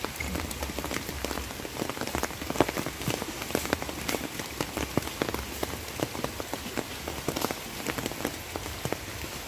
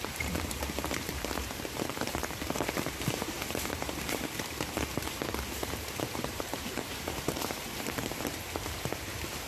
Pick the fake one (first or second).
second